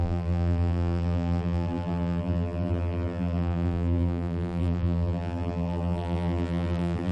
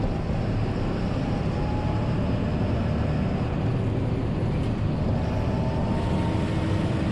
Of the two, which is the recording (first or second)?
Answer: second